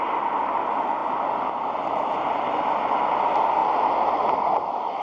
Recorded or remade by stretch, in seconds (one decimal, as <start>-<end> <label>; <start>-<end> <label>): 0.0-5.0 recorded